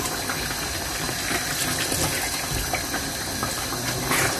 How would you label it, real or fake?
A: real